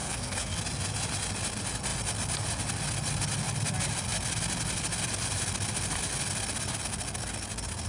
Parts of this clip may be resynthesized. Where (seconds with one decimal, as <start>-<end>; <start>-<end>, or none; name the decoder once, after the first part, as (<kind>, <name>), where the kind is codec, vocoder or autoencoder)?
0.0-0.6 (codec, SNAC)